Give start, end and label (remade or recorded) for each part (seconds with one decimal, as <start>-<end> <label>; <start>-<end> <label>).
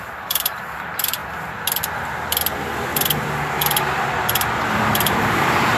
0.0-1.2 remade; 1.2-4.7 recorded; 4.7-5.8 remade